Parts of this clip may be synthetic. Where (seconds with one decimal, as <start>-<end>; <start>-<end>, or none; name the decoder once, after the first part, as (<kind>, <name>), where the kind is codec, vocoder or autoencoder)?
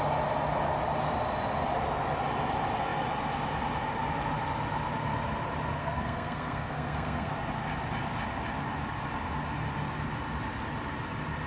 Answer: 5.8-7.3 (codec, SNAC)